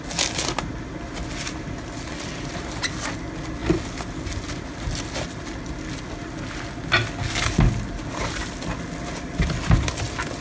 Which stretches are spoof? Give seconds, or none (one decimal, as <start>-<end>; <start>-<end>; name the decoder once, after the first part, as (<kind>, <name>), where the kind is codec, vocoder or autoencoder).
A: none